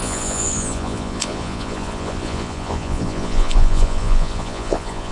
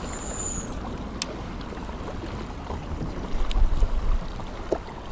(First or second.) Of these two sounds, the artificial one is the first